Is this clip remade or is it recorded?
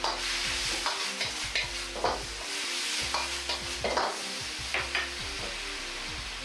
recorded